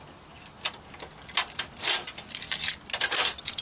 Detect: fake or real real